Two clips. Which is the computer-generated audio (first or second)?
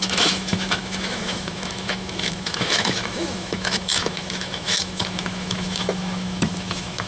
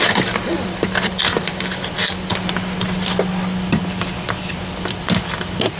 first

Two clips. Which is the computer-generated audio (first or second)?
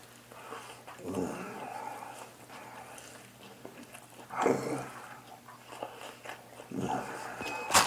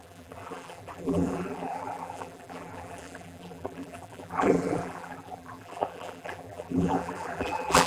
second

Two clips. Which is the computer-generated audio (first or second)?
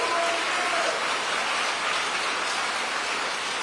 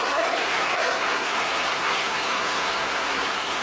second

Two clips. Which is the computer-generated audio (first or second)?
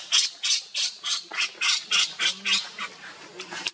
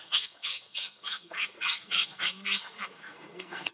second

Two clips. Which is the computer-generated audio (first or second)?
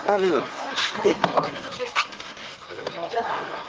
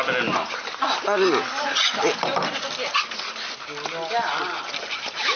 first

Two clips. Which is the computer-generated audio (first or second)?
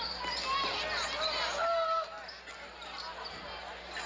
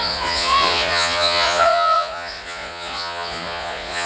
second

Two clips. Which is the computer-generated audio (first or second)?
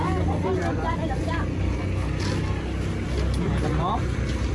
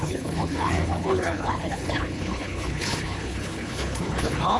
second